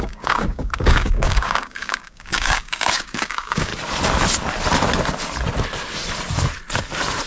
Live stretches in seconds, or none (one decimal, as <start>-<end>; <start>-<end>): 3.7-7.3